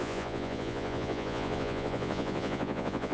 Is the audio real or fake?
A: fake